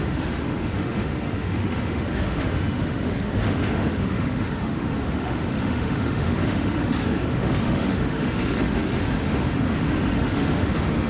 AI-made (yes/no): yes